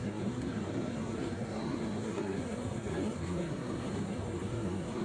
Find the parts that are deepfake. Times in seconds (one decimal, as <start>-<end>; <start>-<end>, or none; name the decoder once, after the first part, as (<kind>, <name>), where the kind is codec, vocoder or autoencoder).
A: 0.0-5.0 (codec, SNAC)